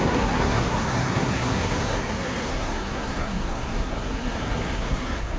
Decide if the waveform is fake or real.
fake